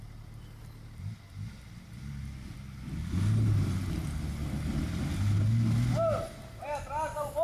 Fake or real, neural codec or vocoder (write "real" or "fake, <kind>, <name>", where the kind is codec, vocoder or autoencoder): real